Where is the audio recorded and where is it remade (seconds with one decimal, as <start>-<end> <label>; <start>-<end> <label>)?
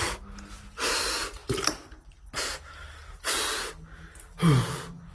0.0-5.1 recorded